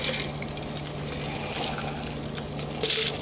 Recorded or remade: recorded